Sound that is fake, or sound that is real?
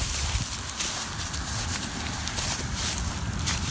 fake